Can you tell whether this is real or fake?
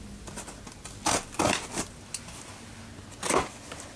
real